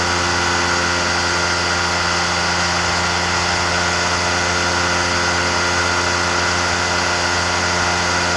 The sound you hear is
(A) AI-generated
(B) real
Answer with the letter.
B